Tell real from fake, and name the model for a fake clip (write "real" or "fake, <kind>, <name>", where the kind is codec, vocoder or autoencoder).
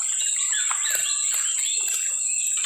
real